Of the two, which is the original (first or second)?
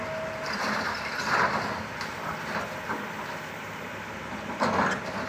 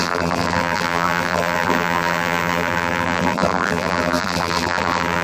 first